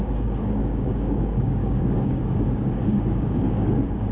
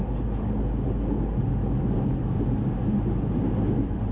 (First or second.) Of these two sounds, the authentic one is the second